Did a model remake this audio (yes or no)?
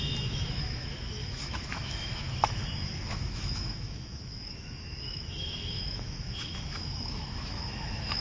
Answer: yes